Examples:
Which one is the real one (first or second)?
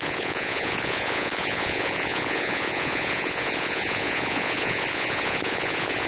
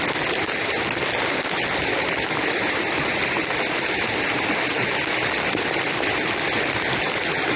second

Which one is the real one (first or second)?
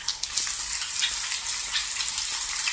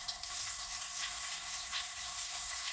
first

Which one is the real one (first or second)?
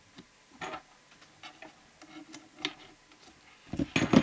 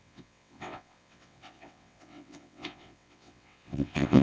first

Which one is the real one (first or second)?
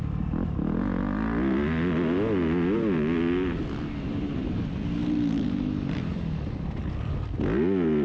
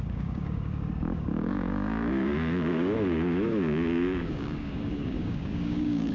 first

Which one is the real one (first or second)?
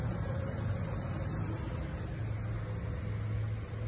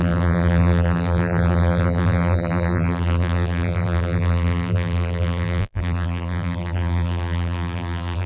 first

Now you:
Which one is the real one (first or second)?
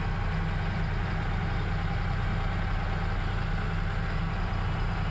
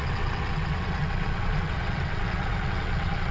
first